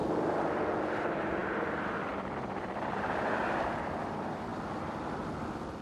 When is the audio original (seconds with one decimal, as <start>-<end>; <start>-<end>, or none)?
0.0-0.9; 4.5-5.8